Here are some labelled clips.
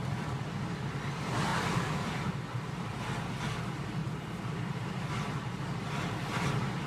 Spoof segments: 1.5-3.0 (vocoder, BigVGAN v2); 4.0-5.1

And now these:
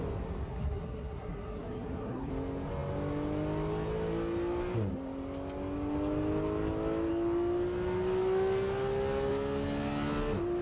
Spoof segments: 0.5-2.3 (codec, SNAC)

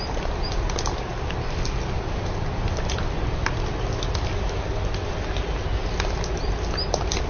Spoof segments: none

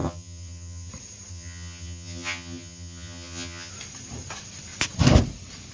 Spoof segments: 0.0-0.9 (vocoder, HiFi-GAN); 1.3-3.7

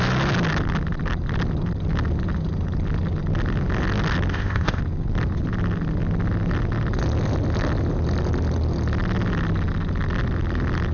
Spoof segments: 4.3-4.8 (codec, ZipCodec)

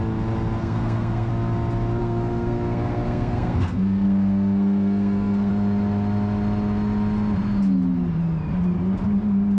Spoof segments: 0.6-1.3 (codec, SNAC); 2.0-5.5

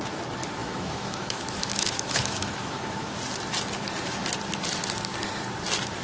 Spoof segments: 0.6-3.1 (autoencoder, DAC-VAE)